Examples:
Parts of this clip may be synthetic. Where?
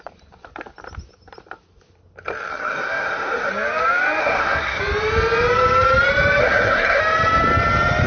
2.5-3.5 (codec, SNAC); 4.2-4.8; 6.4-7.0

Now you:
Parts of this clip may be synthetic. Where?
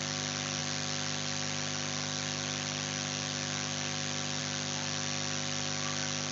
none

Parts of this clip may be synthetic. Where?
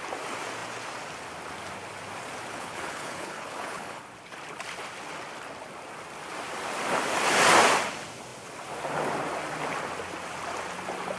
2.5-4.0 (codec, HILCodec)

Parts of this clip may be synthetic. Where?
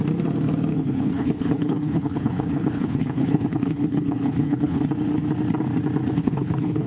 0.7-4.8 (codec, HILCodec); 6.2-6.9